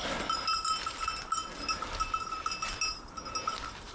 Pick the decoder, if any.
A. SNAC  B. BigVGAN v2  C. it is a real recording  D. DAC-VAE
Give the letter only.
C